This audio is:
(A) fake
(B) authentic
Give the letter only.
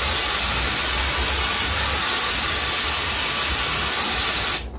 B